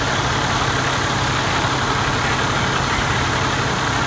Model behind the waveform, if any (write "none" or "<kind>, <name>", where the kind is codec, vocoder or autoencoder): none